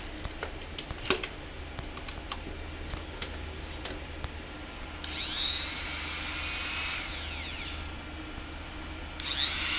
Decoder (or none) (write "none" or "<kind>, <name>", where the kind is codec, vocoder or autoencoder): none